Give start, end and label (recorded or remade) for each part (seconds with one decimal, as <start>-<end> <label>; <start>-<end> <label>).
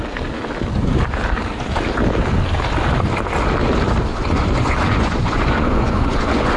0.0-4.1 recorded; 4.1-6.6 remade